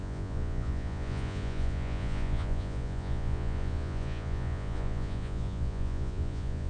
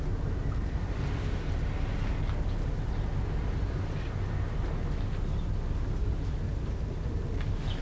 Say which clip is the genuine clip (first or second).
second